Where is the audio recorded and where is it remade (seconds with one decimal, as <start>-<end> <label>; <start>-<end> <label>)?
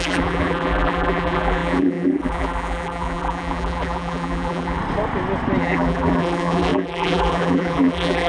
0.0-4.8 remade; 4.8-5.6 recorded; 5.6-8.3 remade